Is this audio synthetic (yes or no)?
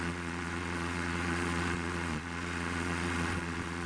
yes